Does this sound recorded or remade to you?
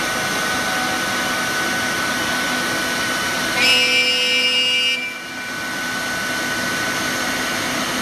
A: recorded